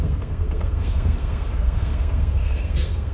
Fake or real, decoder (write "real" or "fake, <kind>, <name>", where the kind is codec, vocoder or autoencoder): fake, codec, SNAC